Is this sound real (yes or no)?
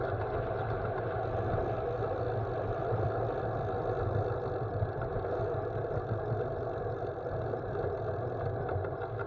yes